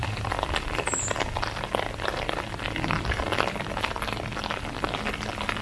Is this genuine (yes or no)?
yes